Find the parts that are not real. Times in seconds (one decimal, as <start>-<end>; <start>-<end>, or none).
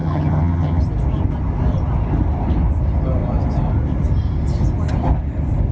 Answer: 0.0-0.8